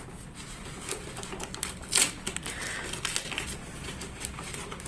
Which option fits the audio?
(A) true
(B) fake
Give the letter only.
A